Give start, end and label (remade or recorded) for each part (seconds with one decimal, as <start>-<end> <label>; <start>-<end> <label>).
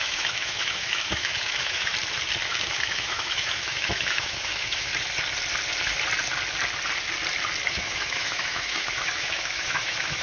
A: 0.0-1.9 remade; 1.9-2.5 recorded; 2.5-4.9 remade; 4.9-7.7 recorded; 7.7-10.2 remade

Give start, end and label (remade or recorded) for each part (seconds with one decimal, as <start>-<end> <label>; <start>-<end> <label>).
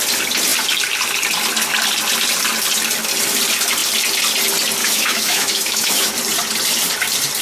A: 0.0-4.8 recorded; 4.8-6.1 remade; 6.1-7.4 recorded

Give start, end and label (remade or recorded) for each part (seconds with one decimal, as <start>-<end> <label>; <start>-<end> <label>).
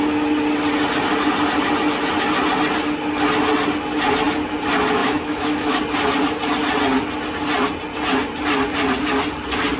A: 0.0-5.0 recorded; 5.0-5.8 remade; 5.8-9.8 recorded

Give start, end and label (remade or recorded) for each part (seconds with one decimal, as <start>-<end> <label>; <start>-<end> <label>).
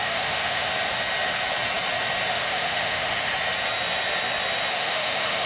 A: 0.0-0.7 remade; 0.7-2.3 recorded; 2.3-3.3 remade; 3.3-4.7 recorded; 4.7-5.5 remade